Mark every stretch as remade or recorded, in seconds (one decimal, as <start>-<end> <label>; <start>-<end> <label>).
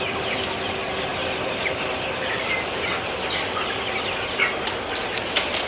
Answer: 0.0-5.7 recorded